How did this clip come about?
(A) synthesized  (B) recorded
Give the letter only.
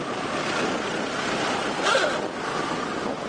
B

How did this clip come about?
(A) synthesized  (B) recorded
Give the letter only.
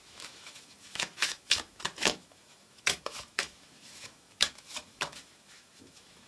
A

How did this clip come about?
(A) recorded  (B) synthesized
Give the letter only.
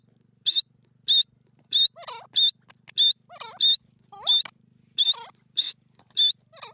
A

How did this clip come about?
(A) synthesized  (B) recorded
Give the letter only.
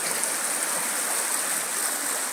B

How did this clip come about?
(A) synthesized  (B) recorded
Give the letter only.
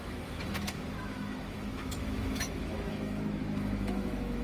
A